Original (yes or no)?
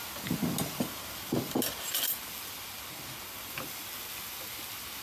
yes